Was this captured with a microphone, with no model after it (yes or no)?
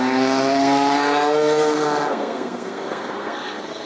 no